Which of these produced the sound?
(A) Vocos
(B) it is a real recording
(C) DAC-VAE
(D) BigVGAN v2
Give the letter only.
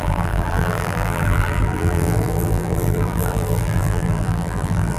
D